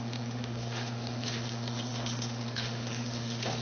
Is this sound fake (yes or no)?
yes